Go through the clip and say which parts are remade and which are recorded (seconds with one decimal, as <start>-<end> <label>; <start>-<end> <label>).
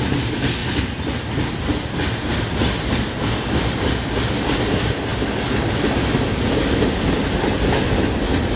0.0-8.6 recorded